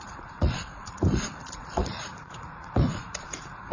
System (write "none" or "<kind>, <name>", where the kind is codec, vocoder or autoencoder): vocoder, Vocos